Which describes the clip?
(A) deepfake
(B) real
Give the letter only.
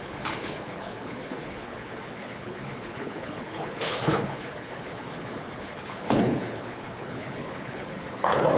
A